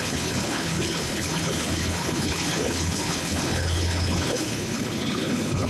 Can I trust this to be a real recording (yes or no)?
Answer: no